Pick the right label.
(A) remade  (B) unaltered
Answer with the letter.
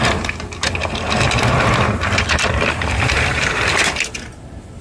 A